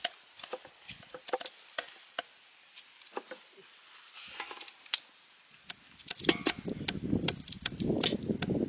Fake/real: real